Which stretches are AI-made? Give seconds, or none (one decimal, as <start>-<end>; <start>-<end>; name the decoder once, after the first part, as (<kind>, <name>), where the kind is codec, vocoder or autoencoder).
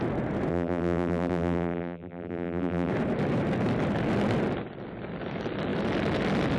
0.5-2.9 (vocoder, BigVGAN v2)